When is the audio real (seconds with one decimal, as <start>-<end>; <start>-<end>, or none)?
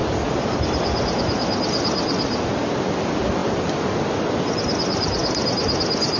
0.0-6.2